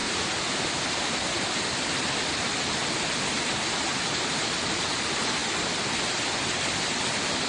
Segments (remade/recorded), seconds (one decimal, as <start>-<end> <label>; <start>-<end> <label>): 0.0-7.5 recorded